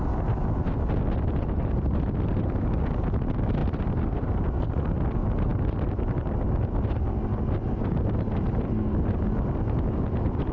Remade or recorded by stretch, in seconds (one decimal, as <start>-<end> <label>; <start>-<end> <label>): 0.0-10.5 recorded